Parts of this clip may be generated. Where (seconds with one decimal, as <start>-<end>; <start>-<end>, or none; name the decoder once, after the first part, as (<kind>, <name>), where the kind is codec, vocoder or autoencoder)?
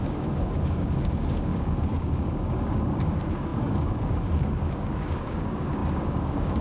0.0-6.6 (codec, DAC)